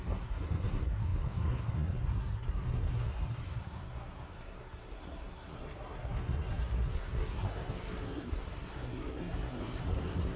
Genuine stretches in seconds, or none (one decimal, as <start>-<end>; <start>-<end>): none